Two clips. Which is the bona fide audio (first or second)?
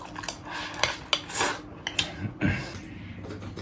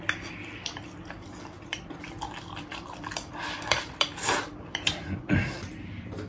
first